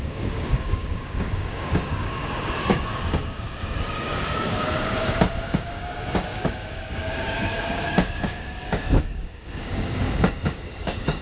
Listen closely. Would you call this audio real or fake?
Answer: fake